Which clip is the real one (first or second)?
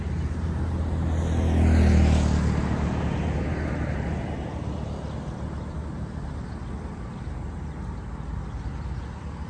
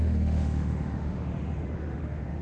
first